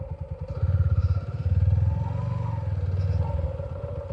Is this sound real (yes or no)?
yes